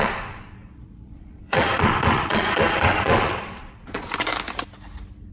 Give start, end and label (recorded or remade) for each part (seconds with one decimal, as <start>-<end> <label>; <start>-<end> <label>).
0.0-4.3 remade; 4.3-5.3 recorded